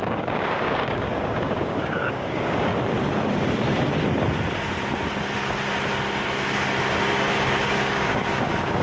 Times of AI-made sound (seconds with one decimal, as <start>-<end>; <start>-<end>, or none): 0.0-2.7; 7.6-8.8